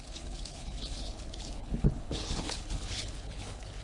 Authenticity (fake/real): fake